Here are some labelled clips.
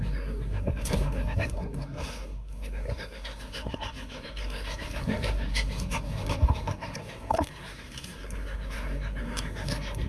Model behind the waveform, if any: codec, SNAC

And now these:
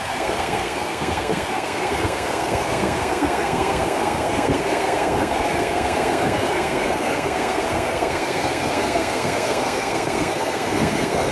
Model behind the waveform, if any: codec, SNAC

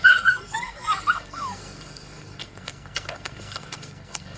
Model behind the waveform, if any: codec, SNAC